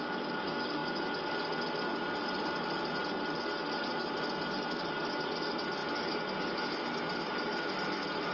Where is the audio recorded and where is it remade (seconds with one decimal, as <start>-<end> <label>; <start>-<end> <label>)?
0.0-8.3 recorded